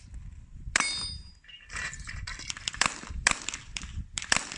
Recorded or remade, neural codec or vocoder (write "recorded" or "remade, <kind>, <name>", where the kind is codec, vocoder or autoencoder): remade, vocoder, BigVGAN v2